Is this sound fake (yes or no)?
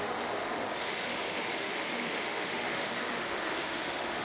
yes